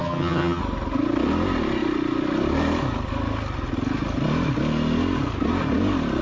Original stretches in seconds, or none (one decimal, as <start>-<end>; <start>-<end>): 0.6-6.2